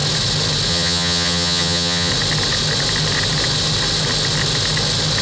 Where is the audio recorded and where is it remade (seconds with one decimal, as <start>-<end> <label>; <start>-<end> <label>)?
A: 0.0-0.7 recorded; 0.7-2.1 remade; 2.1-5.2 recorded